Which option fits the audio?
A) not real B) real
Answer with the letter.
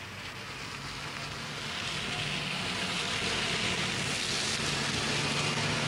B